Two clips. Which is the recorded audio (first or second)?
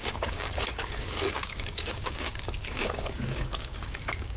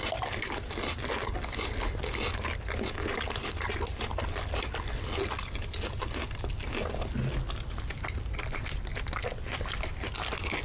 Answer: second